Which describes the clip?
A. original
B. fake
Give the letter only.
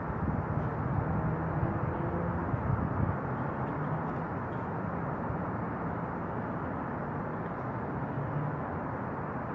A